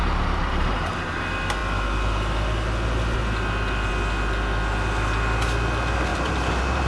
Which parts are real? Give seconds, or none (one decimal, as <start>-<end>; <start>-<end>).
1.2-6.1